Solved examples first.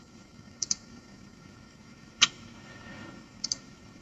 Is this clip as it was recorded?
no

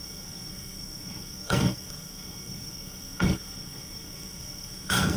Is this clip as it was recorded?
no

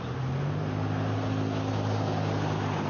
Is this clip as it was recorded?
yes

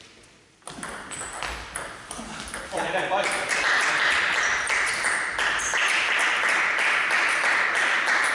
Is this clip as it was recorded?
yes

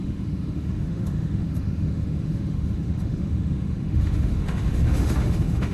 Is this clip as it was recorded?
no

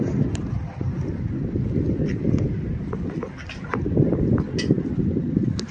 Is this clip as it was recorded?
yes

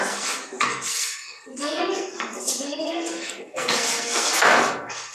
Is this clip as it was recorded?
no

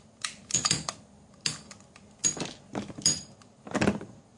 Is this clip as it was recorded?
yes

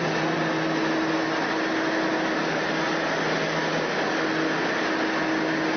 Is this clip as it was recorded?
yes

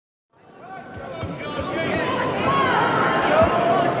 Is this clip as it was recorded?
yes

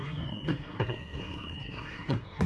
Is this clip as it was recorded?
no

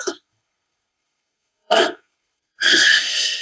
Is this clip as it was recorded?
no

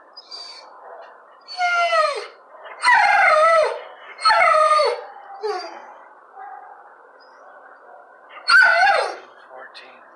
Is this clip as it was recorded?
no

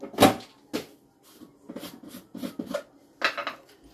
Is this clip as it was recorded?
yes